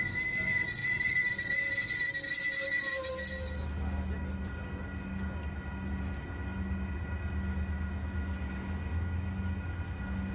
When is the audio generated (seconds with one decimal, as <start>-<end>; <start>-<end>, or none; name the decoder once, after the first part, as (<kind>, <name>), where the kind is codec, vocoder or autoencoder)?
none